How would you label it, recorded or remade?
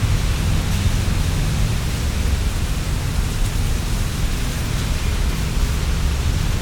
recorded